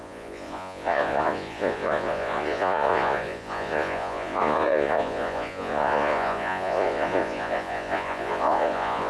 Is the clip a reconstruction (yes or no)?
yes